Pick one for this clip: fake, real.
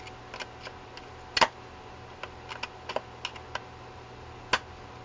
real